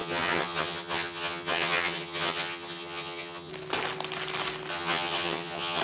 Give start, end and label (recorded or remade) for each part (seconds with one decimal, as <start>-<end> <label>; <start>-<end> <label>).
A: 0.0-3.5 remade; 3.5-4.7 recorded; 4.7-5.8 remade